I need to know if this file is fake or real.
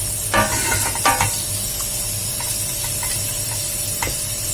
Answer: real